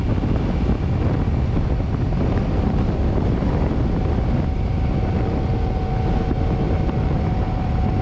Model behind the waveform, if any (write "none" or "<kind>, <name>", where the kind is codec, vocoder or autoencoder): none